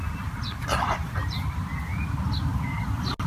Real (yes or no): yes